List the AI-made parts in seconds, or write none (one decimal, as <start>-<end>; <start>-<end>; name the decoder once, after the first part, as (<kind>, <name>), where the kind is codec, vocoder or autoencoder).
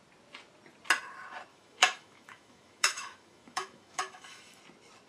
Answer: 1.5-4.6 (autoencoder, DAC-VAE)